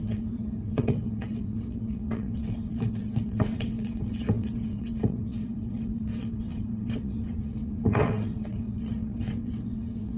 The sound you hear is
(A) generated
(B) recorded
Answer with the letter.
A